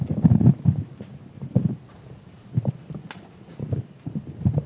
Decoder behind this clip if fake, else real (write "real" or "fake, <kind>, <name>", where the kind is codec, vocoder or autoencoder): real